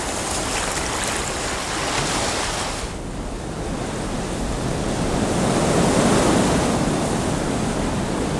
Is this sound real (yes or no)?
yes